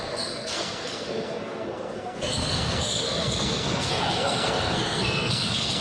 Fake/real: fake